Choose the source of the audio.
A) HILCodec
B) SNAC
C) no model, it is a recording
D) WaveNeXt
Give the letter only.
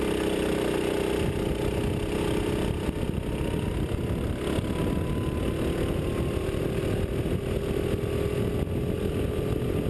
C